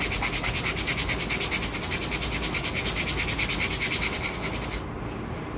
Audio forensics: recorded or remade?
recorded